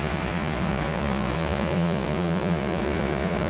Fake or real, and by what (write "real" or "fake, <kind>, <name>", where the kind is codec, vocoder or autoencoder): fake, vocoder, Vocos